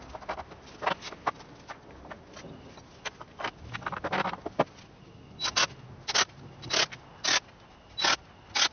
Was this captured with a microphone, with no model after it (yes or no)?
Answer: yes